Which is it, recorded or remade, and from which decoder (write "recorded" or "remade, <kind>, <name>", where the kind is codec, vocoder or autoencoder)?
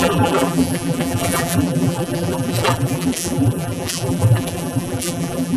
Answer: remade, vocoder, BigVGAN v2